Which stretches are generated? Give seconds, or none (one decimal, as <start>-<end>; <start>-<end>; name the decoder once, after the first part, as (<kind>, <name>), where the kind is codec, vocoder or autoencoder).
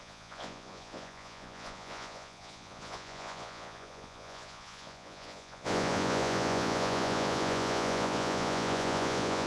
0.0-9.5 (vocoder, Vocos)